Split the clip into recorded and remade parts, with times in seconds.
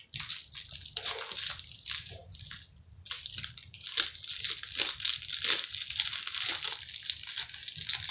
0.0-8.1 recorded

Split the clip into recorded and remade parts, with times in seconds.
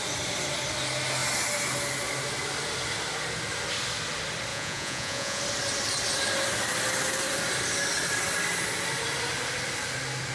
0.0-4.5 recorded; 4.5-5.4 remade; 5.4-10.3 recorded